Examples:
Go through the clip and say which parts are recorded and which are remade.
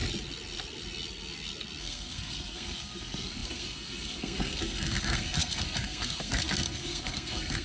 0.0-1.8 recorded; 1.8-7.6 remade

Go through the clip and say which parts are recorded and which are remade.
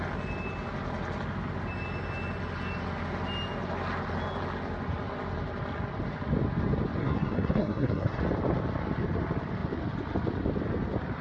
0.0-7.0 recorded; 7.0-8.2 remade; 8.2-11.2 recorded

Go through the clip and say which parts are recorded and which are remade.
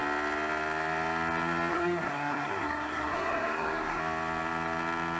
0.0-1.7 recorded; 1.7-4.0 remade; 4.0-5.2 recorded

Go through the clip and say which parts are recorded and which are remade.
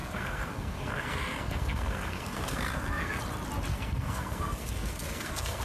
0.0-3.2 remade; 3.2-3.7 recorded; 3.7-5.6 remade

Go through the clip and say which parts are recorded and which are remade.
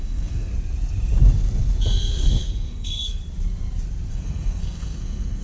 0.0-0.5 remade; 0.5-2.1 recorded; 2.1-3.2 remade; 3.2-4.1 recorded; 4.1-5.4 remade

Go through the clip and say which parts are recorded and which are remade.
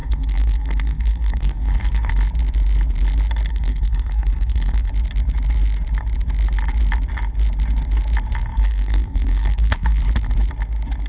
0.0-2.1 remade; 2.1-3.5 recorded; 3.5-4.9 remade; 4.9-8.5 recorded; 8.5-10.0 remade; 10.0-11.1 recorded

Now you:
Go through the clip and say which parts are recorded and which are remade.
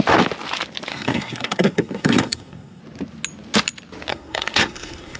0.0-0.9 recorded; 0.9-2.8 remade; 2.8-4.1 recorded; 4.1-5.2 remade